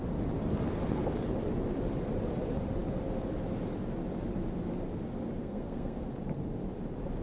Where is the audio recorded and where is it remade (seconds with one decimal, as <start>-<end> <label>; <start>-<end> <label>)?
0.0-5.4 recorded; 5.4-6.1 remade; 6.1-7.2 recorded